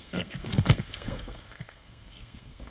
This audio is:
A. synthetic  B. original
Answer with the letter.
A